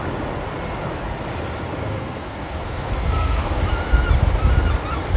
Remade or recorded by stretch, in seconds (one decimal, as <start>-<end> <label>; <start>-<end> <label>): 0.0-1.8 recorded; 1.8-3.6 remade; 3.6-5.2 recorded